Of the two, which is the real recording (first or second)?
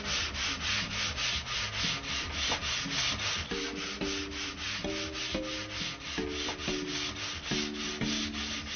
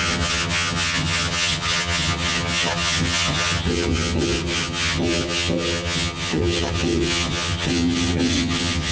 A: first